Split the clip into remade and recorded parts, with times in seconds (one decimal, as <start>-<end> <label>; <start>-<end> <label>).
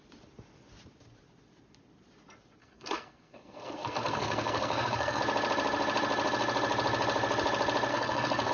0.0-2.6 recorded; 2.6-5.2 remade; 5.2-7.9 recorded; 7.9-8.5 remade